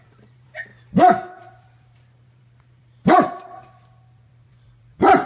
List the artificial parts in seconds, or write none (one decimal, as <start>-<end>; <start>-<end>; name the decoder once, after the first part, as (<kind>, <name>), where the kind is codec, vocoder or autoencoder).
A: 0.0-0.7 (vocoder, BigVGAN v2); 1.4-5.3